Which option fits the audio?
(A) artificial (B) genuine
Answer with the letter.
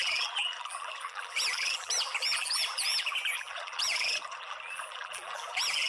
A